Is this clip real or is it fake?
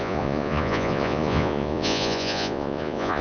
fake